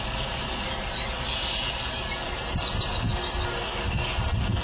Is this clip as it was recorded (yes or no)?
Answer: yes